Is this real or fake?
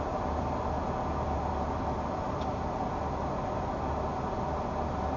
real